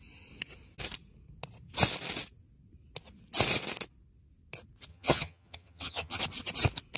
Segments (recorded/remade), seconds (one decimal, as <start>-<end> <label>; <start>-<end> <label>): 0.0-4.9 recorded; 4.9-6.2 remade; 6.2-7.0 recorded